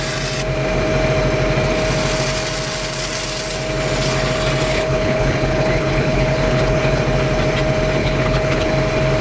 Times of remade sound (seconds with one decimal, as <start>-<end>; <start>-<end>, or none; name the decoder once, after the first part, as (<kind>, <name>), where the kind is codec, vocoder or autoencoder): 4.7-7.0 (codec, HILCodec); 8.0-8.7